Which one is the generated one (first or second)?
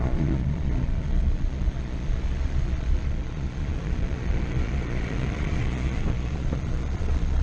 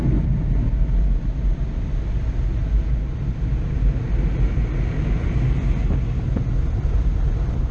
first